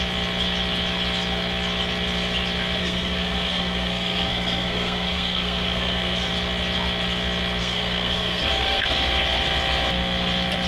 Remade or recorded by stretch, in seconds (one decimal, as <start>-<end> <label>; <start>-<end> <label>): 0.0-2.8 recorded; 2.8-6.3 remade; 6.3-7.6 recorded; 7.6-8.8 remade; 8.8-10.7 recorded